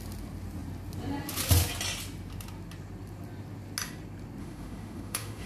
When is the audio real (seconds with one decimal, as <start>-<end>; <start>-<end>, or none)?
0.0-4.4